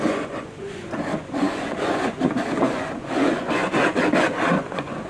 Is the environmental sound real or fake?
fake